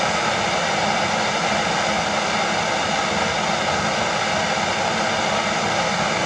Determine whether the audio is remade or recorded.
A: recorded